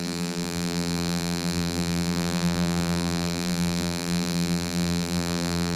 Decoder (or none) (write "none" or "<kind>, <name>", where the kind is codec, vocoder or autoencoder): vocoder, BigVGAN v2